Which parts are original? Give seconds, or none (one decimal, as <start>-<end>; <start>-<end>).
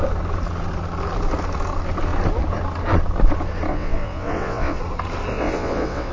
0.0-3.7; 4.8-5.3